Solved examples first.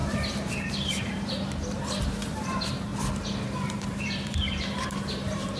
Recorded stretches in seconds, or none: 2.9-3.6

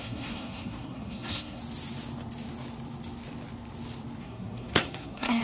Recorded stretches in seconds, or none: 1.6-4.2

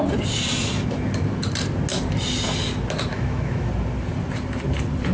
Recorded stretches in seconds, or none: 0.0-3.1; 3.7-5.1